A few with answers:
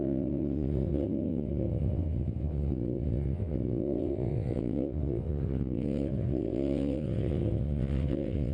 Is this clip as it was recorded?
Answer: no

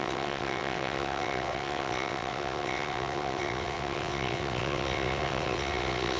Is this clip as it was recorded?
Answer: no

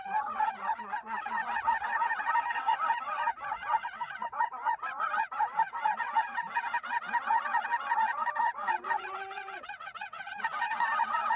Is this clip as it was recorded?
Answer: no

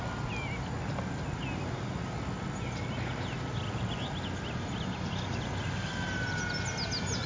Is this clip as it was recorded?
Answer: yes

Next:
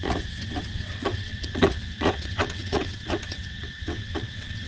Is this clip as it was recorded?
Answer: no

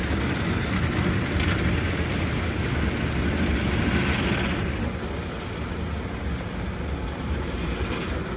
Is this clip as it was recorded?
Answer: yes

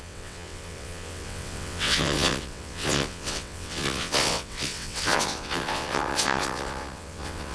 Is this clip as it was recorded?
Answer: no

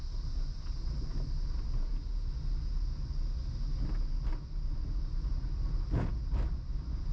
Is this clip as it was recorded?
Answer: yes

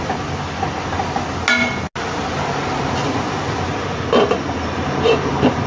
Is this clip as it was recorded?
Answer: yes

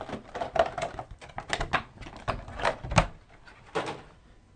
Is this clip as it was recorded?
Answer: yes